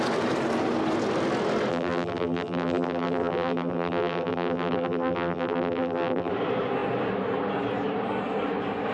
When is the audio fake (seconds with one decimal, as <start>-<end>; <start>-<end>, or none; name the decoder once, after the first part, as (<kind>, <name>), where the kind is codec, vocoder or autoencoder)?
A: 1.7-6.3 (vocoder, BigVGAN v2)